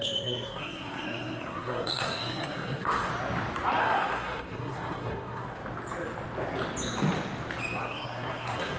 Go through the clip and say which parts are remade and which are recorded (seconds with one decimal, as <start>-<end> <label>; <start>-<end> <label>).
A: 0.0-3.1 remade; 3.1-3.8 recorded; 3.8-5.6 remade; 5.6-7.8 recorded; 7.8-8.8 remade